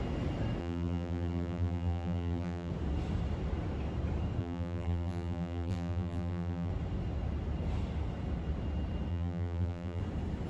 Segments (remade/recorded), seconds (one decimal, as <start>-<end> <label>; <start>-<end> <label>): 0.0-0.6 recorded; 0.6-2.7 remade; 2.7-4.4 recorded; 4.4-6.7 remade; 6.7-9.1 recorded; 9.1-10.0 remade; 10.0-10.5 recorded